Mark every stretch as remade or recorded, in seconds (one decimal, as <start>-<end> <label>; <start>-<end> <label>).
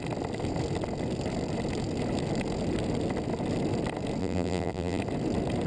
0.0-4.2 recorded; 4.2-5.0 remade; 5.0-5.7 recorded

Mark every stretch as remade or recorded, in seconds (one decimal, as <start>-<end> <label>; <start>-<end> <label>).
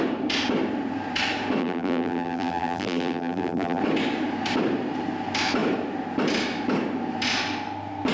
0.0-1.6 recorded; 1.6-3.8 remade; 3.8-8.1 recorded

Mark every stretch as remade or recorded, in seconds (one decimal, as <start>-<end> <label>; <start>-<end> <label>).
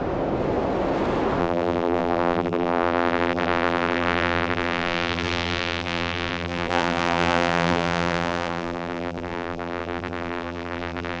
0.0-1.4 recorded; 1.4-11.2 remade